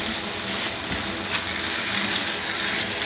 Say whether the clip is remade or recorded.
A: recorded